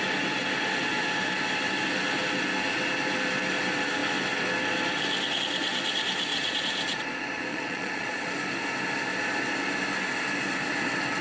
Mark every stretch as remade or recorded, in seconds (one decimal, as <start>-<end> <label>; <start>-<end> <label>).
0.0-6.3 recorded; 6.3-7.0 remade; 7.0-7.5 recorded; 7.5-8.3 remade; 8.3-11.2 recorded